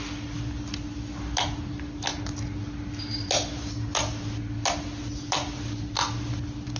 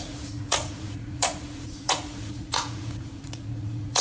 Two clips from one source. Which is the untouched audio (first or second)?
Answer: first